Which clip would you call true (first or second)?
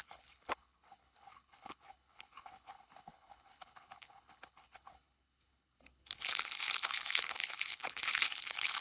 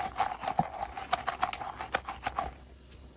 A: second